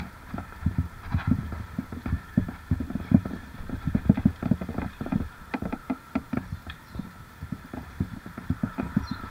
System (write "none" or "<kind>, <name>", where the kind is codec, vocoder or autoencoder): vocoder, BigVGAN v2